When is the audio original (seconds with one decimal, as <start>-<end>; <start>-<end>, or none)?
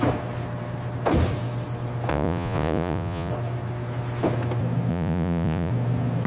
0.0-2.1; 3.3-4.9; 5.7-6.3